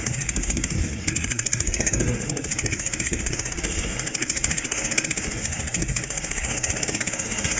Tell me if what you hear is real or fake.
fake